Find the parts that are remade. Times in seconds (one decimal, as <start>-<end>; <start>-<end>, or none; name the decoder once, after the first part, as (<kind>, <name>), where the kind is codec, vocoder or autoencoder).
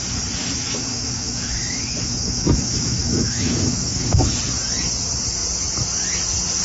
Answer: 0.4-4.3 (autoencoder, DAC-VAE)